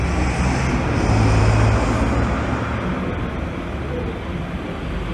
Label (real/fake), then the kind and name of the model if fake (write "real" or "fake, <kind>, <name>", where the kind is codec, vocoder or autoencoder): real